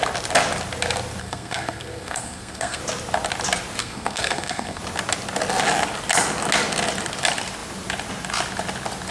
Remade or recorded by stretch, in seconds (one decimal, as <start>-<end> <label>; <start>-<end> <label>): 0.0-1.2 recorded; 1.2-2.8 remade; 2.8-3.8 recorded; 3.8-4.8 remade; 4.8-9.1 recorded